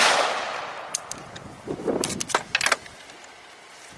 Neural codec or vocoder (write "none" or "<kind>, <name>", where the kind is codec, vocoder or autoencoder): none